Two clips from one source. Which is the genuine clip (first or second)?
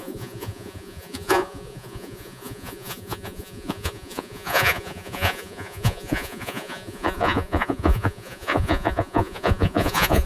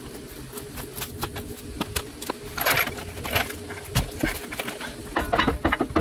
second